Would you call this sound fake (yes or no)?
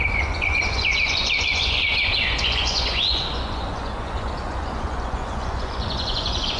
yes